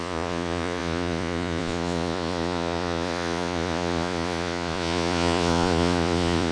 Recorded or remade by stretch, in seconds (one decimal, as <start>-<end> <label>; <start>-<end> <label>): 0.0-6.5 remade